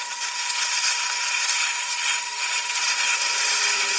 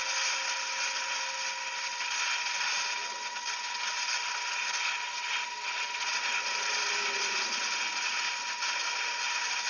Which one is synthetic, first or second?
first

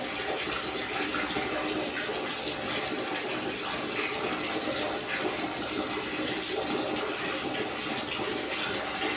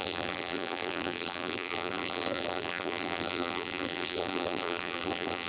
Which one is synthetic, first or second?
second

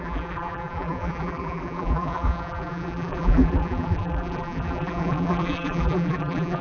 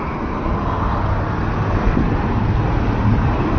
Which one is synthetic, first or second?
first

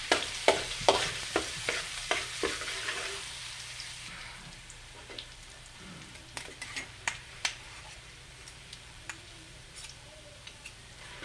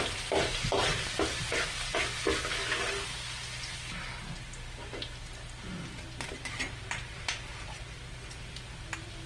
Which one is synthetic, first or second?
first